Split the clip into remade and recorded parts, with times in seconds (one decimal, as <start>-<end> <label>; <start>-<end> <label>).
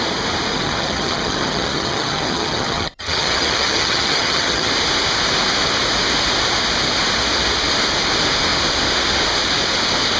0.0-0.5 recorded; 0.5-4.7 remade; 4.7-10.2 recorded